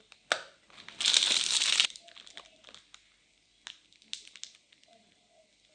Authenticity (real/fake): real